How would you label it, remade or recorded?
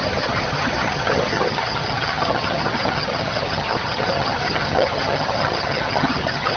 remade